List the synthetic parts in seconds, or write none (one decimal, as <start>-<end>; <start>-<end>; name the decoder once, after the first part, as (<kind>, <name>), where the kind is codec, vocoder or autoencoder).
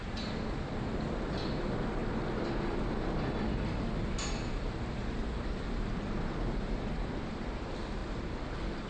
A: none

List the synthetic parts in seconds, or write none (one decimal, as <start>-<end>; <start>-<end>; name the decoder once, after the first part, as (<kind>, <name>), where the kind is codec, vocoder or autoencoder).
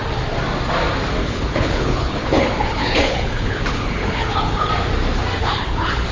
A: 1.2-4.7 (codec, HILCodec); 5.4-6.1